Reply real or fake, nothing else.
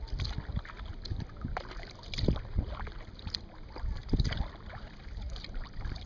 real